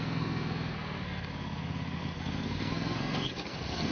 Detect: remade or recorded remade